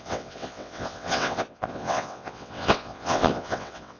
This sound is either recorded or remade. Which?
remade